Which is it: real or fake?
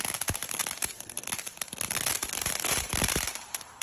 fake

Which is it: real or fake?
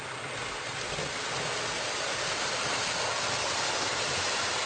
real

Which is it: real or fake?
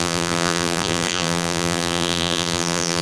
fake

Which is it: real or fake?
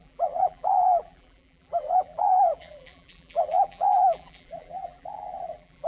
fake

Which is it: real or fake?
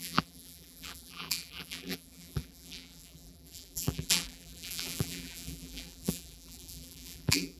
fake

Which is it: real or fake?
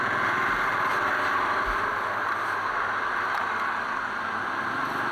real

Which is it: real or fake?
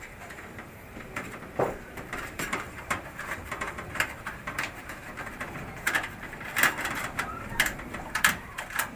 fake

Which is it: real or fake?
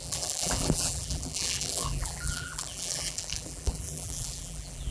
fake